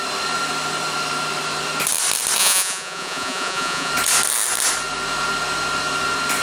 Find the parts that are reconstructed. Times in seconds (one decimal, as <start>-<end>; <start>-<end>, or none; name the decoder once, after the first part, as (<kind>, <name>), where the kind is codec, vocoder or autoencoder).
2.4-3.9 (vocoder, Vocos)